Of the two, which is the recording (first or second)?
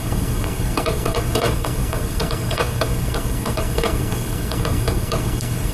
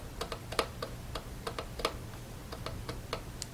second